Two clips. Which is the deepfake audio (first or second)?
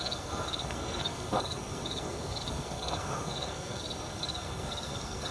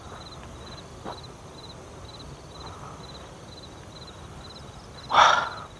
first